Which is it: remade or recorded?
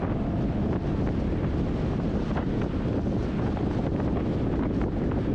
recorded